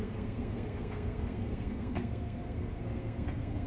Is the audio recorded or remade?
remade